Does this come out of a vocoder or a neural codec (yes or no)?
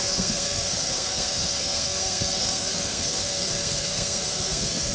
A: yes